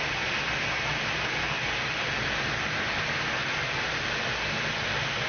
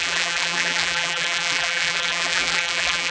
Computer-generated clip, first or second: second